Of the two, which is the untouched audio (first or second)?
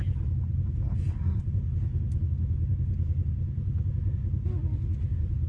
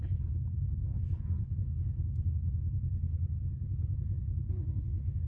first